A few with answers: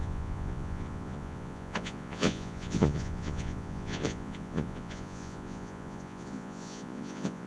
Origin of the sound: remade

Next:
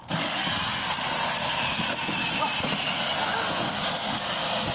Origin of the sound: recorded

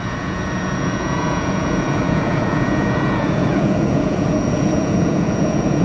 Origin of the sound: remade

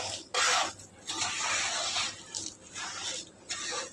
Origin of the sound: recorded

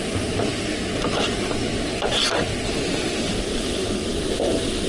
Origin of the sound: recorded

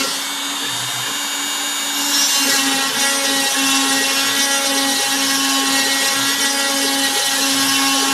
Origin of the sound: recorded